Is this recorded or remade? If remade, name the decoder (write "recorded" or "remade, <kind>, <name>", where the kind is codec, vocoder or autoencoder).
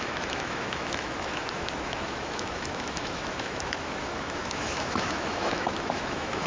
remade, autoencoder, DAC-VAE